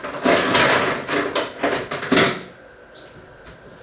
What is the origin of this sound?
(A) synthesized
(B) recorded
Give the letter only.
B